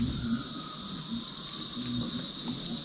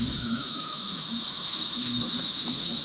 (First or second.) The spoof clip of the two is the second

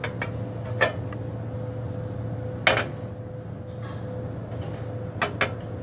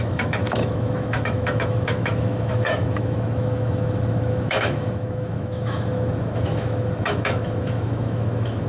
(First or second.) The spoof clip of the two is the second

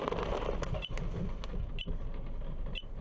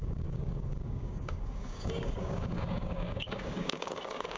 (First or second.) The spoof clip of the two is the second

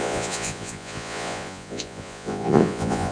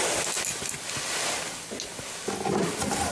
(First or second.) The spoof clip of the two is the first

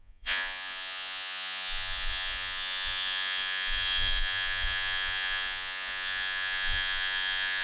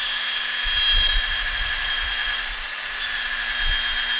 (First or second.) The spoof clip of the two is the first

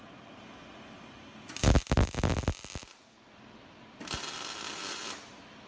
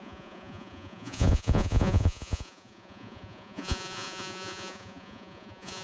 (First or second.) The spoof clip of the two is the second